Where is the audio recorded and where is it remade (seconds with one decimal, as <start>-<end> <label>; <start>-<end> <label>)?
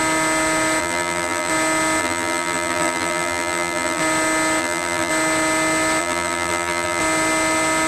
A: 0.0-0.8 recorded; 0.8-1.5 remade; 1.5-2.0 recorded; 2.0-4.0 remade; 4.0-4.6 recorded; 4.6-5.1 remade; 5.1-6.0 recorded; 6.0-7.0 remade; 7.0-7.9 recorded